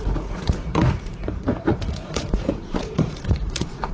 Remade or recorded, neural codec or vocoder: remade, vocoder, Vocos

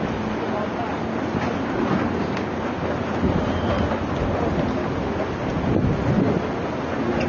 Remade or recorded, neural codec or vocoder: recorded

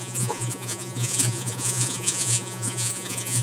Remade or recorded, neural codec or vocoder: remade, vocoder, Vocos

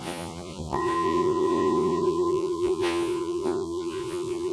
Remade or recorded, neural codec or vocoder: remade, vocoder, Vocos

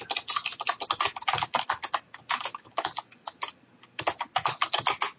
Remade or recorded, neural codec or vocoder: recorded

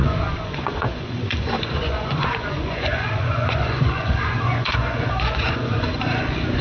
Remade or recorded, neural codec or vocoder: remade, vocoder, Vocos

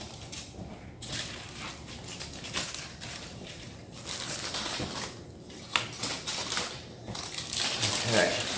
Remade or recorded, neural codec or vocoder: recorded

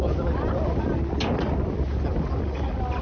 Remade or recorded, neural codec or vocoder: recorded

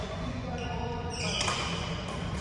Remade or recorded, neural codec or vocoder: remade, vocoder, Vocos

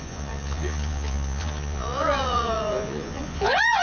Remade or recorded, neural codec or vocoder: remade, vocoder, Vocos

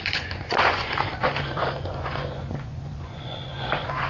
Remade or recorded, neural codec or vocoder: remade, vocoder, Vocos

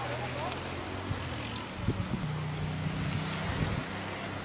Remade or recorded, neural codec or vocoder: recorded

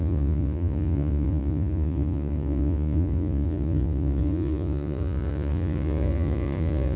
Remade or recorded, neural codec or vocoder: remade, vocoder, Vocos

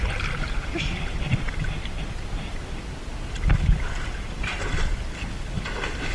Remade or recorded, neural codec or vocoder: recorded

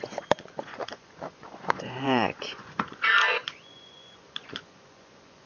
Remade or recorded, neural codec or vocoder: remade, vocoder, Vocos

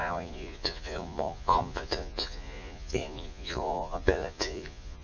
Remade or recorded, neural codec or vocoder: remade, vocoder, Vocos